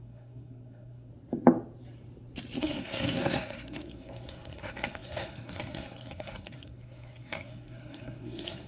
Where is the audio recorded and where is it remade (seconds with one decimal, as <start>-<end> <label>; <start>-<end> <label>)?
0.0-1.1 remade; 1.1-2.6 recorded; 2.6-8.7 remade